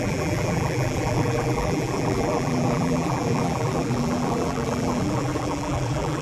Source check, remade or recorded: remade